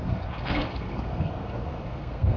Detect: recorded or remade remade